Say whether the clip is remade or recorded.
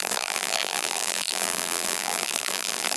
remade